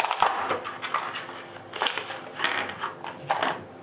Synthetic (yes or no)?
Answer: no